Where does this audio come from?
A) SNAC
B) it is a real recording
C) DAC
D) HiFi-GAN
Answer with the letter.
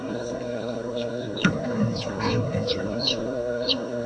A